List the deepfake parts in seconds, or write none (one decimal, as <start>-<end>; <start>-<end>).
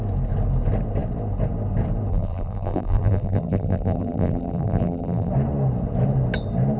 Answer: 2.1-5.3